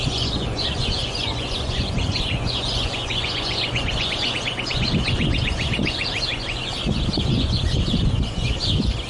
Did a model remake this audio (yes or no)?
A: yes